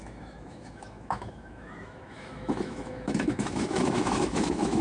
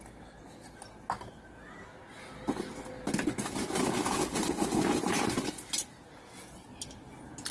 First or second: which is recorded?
second